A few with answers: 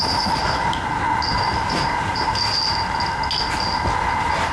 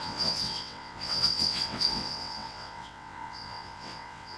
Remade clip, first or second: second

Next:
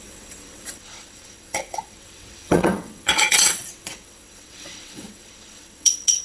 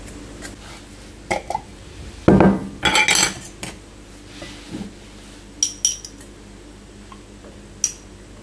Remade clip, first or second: first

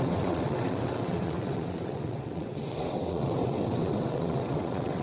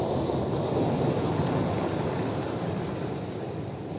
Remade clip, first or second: first